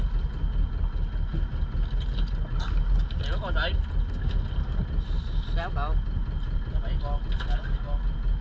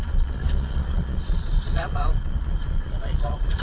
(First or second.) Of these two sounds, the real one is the first